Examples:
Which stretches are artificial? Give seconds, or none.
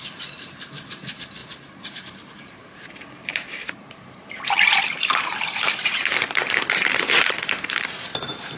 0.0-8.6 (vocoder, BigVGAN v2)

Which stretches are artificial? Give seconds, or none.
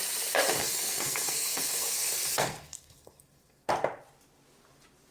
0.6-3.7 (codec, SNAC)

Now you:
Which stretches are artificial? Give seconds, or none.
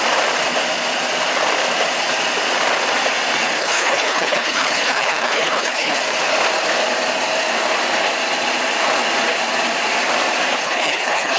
3.6-6.0 (codec, HILCodec); 10.6-11.4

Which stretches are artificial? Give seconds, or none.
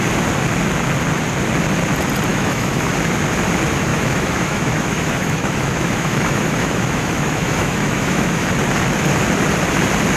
2.3-2.9 (autoencoder, DAC-VAE); 3.9-8.5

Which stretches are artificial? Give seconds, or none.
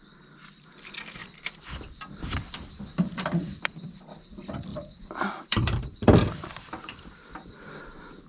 1.2-4.0 (vocoder, BigVGAN v2); 4.7-7.0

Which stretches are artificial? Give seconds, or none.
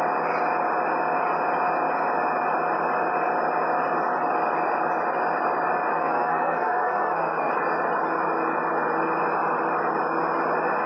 5.9-7.5 (codec, SNAC)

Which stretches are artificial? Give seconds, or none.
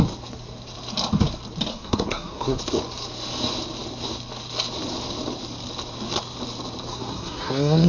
1.7-2.6 (codec, SNAC); 6.9-7.9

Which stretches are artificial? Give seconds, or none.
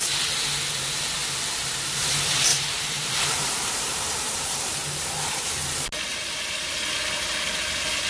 2.5-5.5 (vocoder, BigVGAN v2); 6.1-6.8